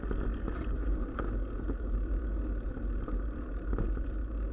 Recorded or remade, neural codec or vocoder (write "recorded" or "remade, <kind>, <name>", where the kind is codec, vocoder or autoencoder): recorded